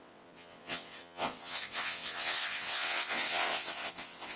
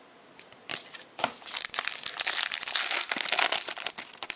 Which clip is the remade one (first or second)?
first